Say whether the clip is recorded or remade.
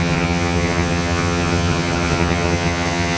remade